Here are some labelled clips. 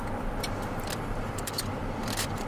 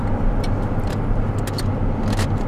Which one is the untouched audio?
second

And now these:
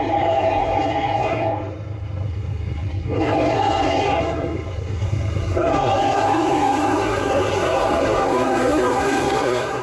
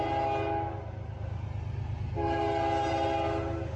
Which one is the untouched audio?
second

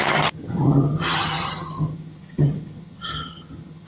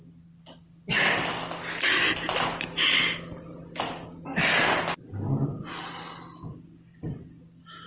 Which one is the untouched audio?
second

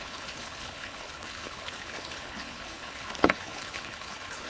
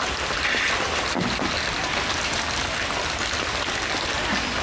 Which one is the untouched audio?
second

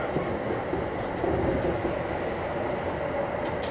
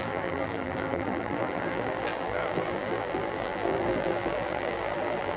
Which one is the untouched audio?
first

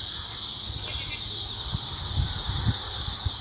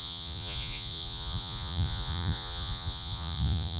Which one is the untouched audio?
first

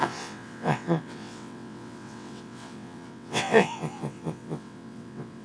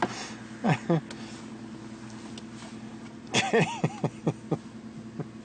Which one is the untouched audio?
second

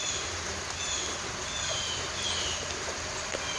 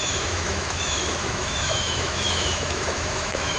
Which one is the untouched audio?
first